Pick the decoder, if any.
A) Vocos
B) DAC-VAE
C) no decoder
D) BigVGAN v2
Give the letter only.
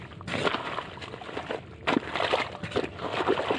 C